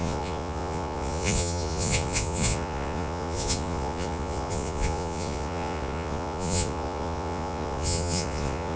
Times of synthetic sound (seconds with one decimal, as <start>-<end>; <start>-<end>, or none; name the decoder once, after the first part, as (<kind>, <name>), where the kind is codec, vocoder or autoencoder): 0.0-8.8 (vocoder, Vocos)